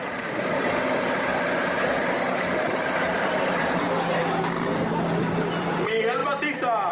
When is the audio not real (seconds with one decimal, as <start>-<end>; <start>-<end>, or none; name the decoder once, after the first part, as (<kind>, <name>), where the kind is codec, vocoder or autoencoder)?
0.0-4.2 (vocoder, BigVGAN v2); 5.6-6.2